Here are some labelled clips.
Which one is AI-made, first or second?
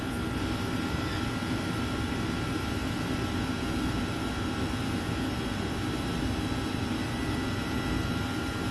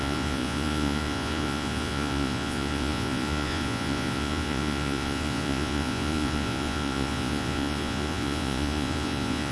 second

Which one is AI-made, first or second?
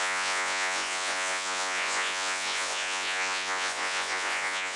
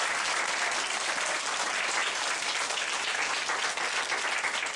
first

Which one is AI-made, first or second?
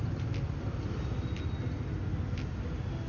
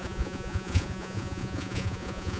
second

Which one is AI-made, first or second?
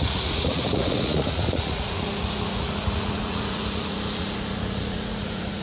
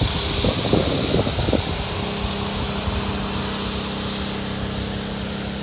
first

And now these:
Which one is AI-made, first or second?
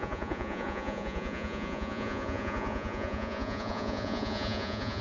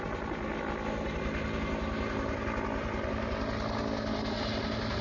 first